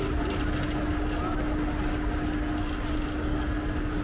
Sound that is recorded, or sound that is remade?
recorded